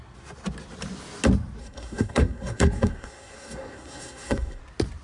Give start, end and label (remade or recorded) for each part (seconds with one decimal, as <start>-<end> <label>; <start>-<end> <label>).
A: 0.0-1.6 recorded; 1.6-4.6 remade; 4.6-5.0 recorded